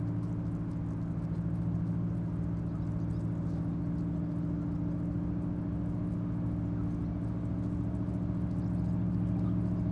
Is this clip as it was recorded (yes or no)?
yes